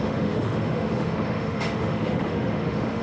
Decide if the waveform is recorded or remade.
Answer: remade